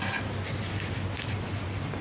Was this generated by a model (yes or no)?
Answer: no